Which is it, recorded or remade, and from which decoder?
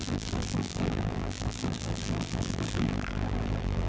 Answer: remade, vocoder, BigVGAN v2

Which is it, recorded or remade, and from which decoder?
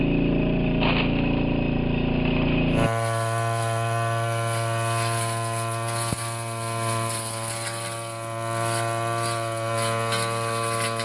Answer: recorded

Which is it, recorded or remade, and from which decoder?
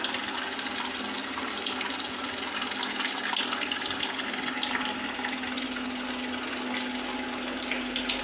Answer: recorded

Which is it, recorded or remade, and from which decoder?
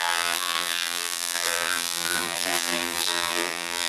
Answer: remade, vocoder, BigVGAN v2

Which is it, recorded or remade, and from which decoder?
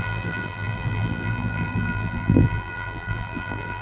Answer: remade, vocoder, BigVGAN v2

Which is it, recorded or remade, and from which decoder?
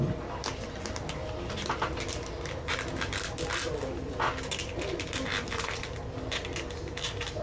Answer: recorded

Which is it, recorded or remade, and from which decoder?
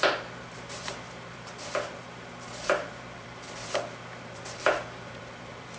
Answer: remade, vocoder, BigVGAN v2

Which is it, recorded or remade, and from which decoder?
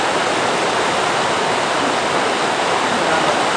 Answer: remade, vocoder, BigVGAN v2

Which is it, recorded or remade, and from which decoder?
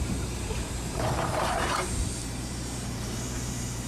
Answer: remade, vocoder, BigVGAN v2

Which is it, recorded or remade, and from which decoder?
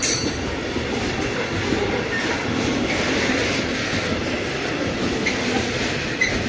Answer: remade, vocoder, BigVGAN v2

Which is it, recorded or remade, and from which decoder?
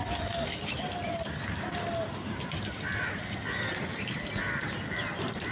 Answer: recorded